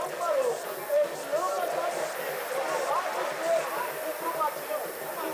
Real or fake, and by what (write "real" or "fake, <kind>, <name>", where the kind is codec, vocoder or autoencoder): real